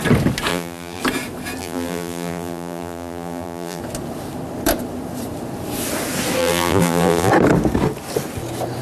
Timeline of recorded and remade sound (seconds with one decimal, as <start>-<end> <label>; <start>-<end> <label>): 0.0-0.5 recorded; 0.5-1.0 remade; 1.0-1.6 recorded; 1.6-3.8 remade; 3.8-6.4 recorded; 6.4-7.3 remade; 7.3-8.8 recorded